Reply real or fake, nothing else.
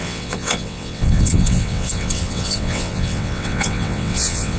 fake